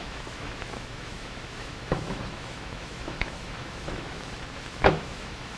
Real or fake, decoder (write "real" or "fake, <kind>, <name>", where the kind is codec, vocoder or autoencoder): fake, autoencoder, DAC-VAE